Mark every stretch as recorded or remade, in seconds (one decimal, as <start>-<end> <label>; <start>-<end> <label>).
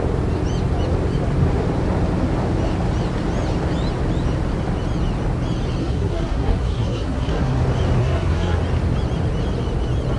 0.0-5.8 recorded; 5.8-7.6 remade; 7.6-8.0 recorded; 8.0-8.6 remade; 8.6-10.2 recorded